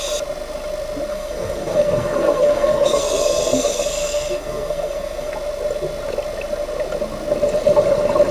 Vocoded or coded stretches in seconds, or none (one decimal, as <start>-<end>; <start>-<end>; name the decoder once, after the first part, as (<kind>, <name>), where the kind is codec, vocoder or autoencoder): 1.1-5.3 (codec, SNAC)